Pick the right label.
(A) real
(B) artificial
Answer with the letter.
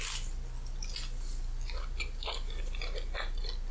A